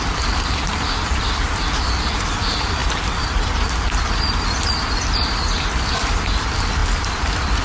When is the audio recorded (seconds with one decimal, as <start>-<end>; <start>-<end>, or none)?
none